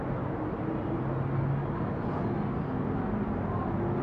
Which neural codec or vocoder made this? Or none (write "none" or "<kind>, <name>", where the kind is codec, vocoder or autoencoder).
none